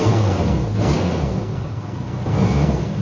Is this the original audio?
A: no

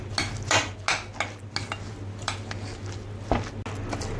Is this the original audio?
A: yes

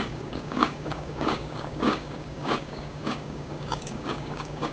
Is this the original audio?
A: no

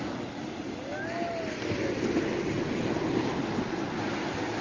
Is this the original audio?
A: yes